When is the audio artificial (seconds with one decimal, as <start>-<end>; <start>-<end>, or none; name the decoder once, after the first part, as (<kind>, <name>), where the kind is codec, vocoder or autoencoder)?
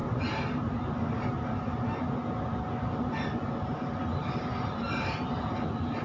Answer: none